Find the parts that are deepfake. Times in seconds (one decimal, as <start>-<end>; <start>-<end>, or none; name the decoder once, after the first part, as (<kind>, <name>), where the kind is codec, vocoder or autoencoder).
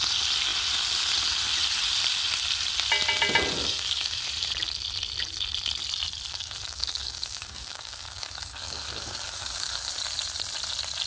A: 3.6-4.2 (codec, DAC); 6.3-9.9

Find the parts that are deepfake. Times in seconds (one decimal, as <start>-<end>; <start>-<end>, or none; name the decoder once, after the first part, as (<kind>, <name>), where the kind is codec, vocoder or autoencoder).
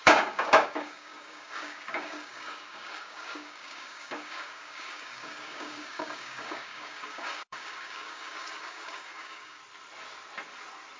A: 0.0-9.6 (codec, DAC)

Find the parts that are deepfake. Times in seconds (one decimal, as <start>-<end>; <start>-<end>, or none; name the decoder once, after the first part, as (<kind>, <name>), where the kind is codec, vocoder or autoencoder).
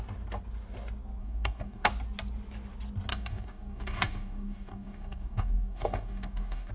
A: 1.2-1.9 (codec, DAC); 3.1-6.7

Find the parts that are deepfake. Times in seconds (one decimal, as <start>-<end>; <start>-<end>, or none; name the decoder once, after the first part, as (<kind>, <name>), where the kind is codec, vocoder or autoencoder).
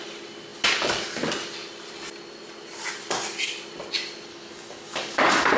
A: 4.3-5.6 (codec, DAC)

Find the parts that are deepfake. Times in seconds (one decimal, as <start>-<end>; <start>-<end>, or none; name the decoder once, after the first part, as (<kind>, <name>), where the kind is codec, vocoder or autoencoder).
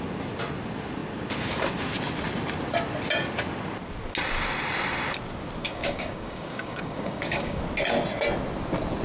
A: 5.6-7.6 (codec, DAC)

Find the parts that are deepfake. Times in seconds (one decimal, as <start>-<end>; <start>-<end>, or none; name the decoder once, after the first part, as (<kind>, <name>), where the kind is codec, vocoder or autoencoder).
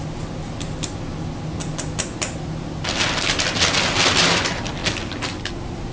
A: none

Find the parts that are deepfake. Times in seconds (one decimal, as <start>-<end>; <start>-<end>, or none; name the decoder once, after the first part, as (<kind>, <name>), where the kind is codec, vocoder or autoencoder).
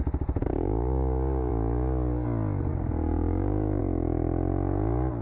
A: 0.4-1.5 (codec, DAC); 2.7-3.8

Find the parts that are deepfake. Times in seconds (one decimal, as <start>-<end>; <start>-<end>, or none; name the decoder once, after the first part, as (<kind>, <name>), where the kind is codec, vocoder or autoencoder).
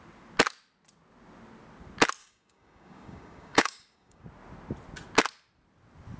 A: 2.2-4.2 (codec, DAC)